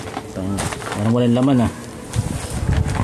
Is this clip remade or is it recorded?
recorded